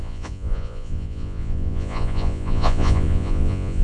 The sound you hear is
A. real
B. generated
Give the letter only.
B